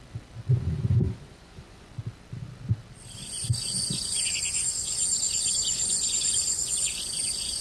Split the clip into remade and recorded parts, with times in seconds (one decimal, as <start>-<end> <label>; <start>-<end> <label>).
0.0-0.5 recorded; 0.5-1.9 remade; 1.9-3.2 recorded; 3.2-7.6 remade